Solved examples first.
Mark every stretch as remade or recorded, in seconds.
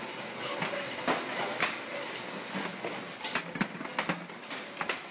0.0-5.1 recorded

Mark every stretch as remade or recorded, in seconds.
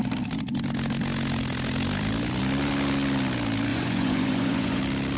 0.0-3.7 recorded; 3.7-4.8 remade; 4.8-5.2 recorded